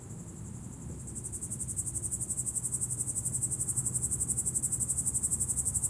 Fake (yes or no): no